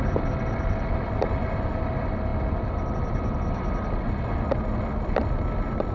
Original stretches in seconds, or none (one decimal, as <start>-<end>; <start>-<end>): 0.0-5.9